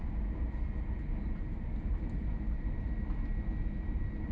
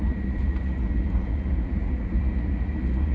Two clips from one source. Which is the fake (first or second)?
second